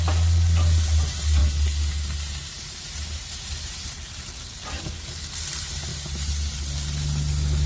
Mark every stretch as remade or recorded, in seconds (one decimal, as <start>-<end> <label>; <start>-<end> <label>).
0.0-7.7 recorded